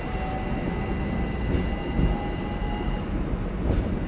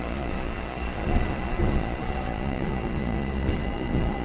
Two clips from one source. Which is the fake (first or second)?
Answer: second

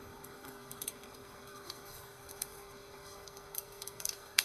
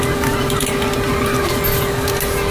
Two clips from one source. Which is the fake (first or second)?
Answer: first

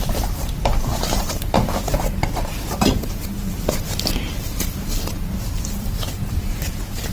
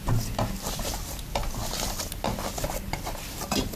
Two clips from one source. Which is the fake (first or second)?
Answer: first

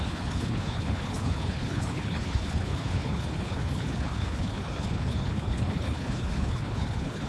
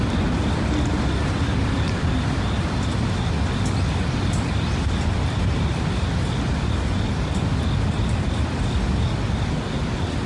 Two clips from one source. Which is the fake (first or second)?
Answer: first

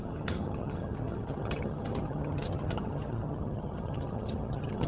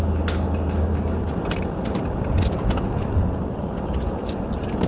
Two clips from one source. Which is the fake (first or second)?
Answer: first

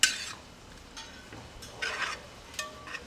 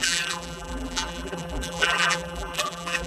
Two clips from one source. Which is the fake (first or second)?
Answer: second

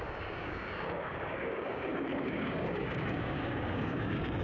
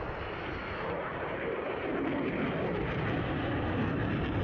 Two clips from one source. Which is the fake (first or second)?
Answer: first